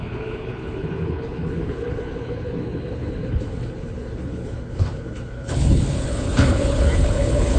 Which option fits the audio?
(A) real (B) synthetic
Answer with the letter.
B